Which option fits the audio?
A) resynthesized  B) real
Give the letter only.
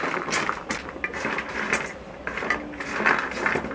B